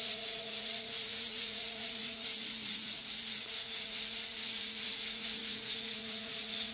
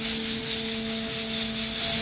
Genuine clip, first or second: second